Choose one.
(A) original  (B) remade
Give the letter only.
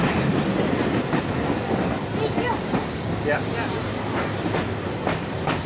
A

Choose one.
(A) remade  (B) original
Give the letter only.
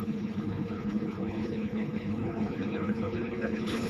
A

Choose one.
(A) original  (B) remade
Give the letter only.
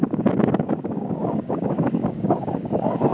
B